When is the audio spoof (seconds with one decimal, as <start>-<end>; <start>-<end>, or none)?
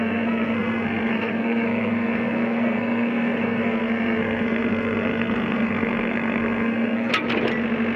0.0-7.1